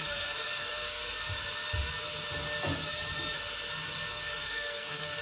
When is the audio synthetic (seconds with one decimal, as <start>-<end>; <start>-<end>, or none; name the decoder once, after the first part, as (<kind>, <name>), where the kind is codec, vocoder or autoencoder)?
0.0-1.0 (codec, SNAC); 4.1-5.2